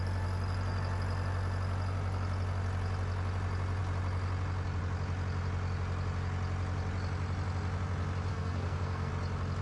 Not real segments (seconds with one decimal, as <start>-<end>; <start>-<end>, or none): 8.3-9.1